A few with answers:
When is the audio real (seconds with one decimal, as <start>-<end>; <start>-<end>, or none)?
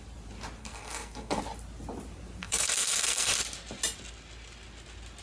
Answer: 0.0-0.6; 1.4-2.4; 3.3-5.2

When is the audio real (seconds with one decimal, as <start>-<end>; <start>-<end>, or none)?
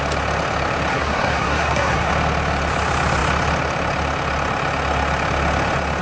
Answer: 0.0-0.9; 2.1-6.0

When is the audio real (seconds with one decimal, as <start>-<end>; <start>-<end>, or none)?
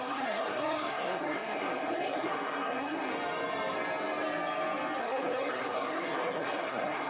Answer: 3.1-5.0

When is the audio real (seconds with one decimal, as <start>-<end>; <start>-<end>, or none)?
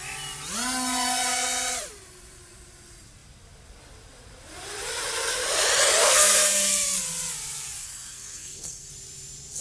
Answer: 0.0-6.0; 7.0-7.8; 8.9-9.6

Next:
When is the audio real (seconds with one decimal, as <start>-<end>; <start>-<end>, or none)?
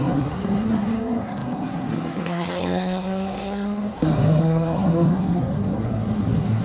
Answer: none